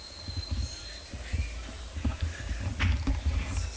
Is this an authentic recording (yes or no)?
yes